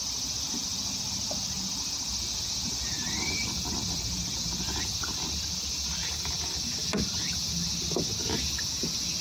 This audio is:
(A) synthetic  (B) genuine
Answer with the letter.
B